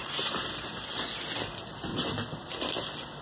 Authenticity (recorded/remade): recorded